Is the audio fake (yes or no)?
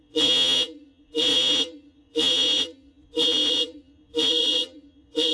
yes